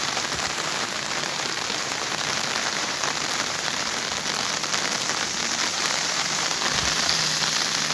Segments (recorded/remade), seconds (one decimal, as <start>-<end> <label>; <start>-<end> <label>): 0.0-4.0 remade; 4.0-5.7 recorded; 5.7-7.2 remade; 7.2-7.9 recorded